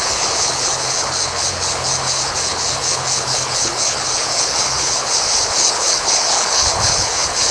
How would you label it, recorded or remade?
remade